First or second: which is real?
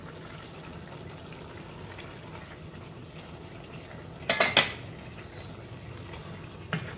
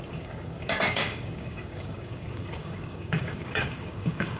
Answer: first